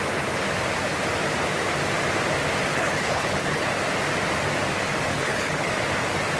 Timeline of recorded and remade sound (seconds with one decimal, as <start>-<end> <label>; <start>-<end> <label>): 0.0-2.7 recorded; 2.7-3.7 remade; 3.7-5.1 recorded; 5.1-5.7 remade; 5.7-6.4 recorded